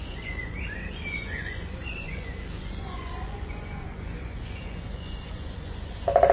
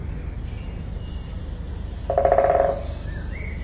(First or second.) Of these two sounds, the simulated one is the first